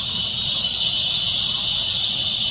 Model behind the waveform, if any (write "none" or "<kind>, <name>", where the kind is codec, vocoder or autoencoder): none